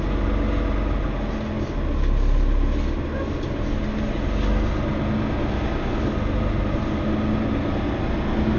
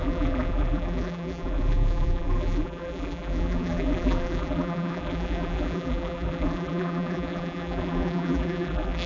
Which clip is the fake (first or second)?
second